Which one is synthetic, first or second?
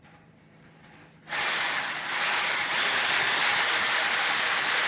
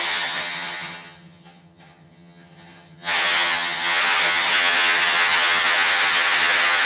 second